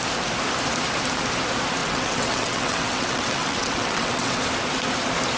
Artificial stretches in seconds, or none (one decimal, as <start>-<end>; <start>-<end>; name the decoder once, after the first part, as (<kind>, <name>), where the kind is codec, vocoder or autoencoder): 1.8-4.4 (vocoder, WaveNeXt)